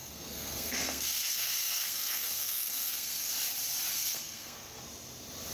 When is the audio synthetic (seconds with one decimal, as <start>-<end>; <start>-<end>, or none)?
0.0-3.3; 3.9-4.8